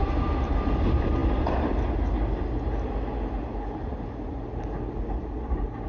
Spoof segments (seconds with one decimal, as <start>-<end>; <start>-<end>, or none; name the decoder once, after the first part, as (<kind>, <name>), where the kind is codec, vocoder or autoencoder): none